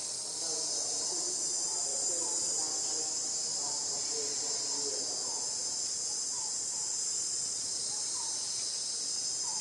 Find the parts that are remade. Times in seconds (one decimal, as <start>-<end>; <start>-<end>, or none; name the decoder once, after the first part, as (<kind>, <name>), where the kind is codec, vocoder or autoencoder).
none